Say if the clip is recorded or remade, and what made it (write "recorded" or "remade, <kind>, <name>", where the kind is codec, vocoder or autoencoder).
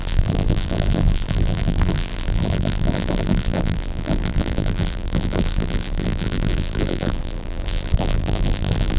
remade, vocoder, BigVGAN v2